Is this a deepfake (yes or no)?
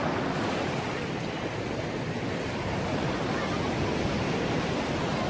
no